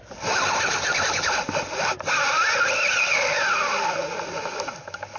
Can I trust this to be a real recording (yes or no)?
yes